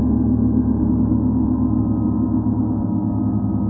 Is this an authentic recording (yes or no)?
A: no